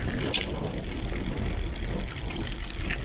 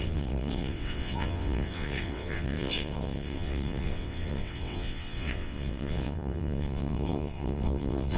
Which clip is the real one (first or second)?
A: first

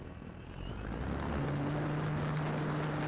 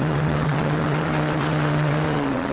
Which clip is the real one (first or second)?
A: first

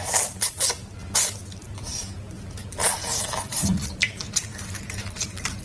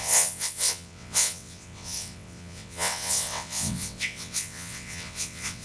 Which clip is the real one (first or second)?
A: first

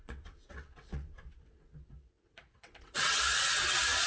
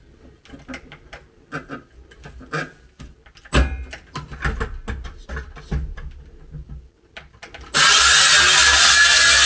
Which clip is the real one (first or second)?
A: second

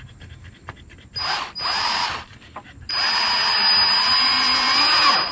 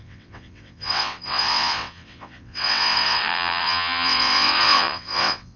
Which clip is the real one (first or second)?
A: first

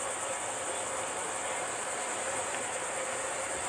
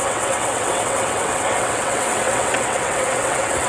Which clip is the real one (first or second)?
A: first